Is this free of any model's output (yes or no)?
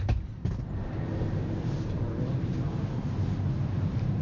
yes